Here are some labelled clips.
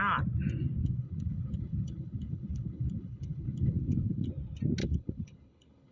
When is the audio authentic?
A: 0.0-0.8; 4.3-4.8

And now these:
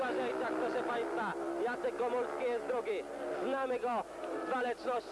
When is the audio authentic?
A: 0.0-5.1